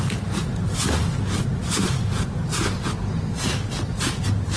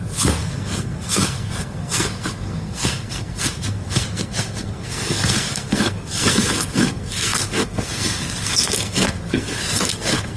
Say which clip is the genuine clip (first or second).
first